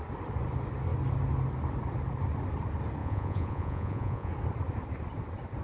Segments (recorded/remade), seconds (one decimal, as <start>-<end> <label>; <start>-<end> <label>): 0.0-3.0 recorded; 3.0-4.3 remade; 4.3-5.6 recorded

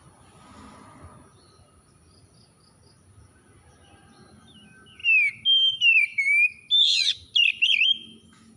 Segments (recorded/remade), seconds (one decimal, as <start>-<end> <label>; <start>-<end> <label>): 0.0-8.6 recorded

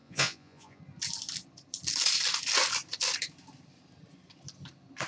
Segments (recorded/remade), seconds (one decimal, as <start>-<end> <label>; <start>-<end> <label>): 0.0-0.8 remade; 0.8-5.1 recorded

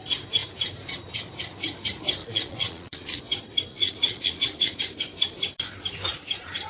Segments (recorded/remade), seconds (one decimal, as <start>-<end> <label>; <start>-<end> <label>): 0.0-2.2 recorded; 2.2-3.2 remade; 3.2-3.7 recorded; 3.7-4.7 remade; 4.7-6.7 recorded

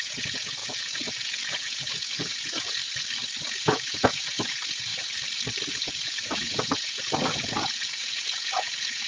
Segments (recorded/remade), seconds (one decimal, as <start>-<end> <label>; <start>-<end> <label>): 0.0-2.8 remade; 2.8-3.5 recorded; 3.5-4.9 remade; 4.9-5.8 recorded; 5.8-9.1 remade

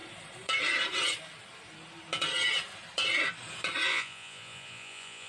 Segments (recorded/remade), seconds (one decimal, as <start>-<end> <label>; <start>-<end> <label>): 0.0-3.9 recorded; 3.9-5.3 remade

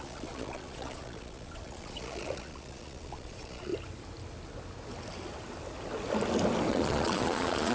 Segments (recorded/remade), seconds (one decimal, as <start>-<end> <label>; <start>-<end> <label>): 0.0-3.7 remade; 3.7-6.7 recorded; 6.7-7.7 remade

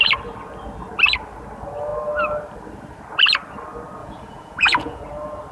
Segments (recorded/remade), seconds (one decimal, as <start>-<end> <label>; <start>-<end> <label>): 0.0-4.0 recorded; 4.0-5.0 remade; 5.0-5.5 recorded